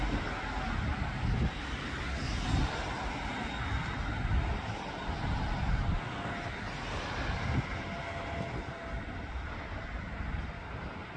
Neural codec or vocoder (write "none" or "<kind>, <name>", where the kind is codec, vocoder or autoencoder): none